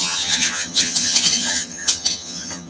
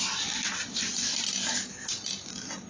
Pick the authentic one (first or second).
second